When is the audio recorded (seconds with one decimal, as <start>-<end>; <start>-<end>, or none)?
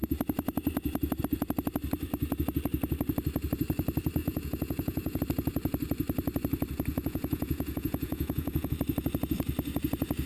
0.0-4.2; 5.2-6.9; 8.7-10.3